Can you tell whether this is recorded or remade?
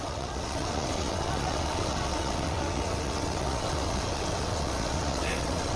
remade